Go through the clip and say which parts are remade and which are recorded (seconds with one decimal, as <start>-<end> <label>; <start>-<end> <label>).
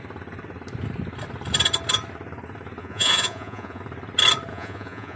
0.0-2.8 recorded; 2.8-3.8 remade; 3.8-4.5 recorded; 4.5-5.2 remade